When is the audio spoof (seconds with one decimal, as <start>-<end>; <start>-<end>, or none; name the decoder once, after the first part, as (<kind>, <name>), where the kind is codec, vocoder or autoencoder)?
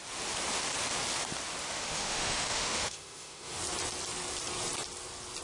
1.6-3.6 (autoencoder, DAC-VAE)